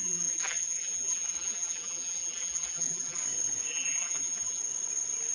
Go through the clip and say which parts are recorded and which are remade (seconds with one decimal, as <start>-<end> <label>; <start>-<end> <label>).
0.0-3.2 remade; 3.2-3.7 recorded; 3.7-4.6 remade; 4.6-5.3 recorded